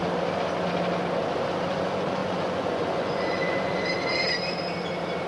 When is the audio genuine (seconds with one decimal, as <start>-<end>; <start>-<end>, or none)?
0.0-1.7; 3.8-5.3